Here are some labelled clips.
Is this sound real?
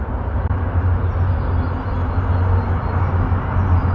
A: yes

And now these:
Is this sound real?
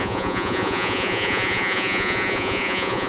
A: no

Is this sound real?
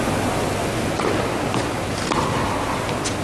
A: yes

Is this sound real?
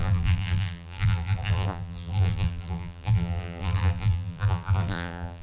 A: no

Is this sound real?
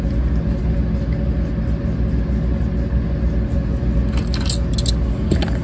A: yes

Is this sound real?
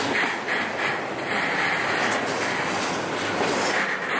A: yes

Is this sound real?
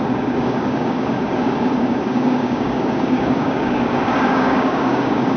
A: no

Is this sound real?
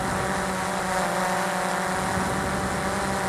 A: yes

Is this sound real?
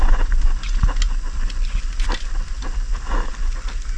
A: yes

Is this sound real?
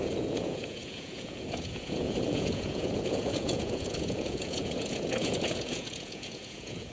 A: no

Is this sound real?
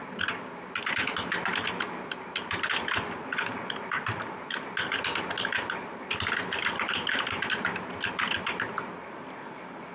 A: yes